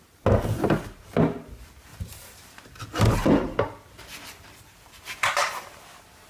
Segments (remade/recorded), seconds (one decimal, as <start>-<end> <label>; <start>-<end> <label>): 0.0-1.9 recorded; 1.9-5.7 remade; 5.7-6.3 recorded